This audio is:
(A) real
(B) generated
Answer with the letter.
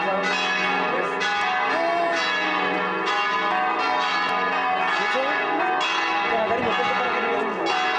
A